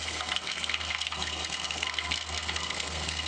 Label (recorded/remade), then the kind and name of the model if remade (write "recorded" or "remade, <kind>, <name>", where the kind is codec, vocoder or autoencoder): remade, codec, SNAC